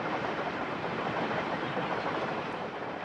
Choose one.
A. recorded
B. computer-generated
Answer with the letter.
B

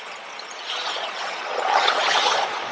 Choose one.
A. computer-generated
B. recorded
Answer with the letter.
A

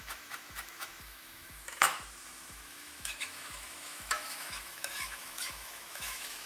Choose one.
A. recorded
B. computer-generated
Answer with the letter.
B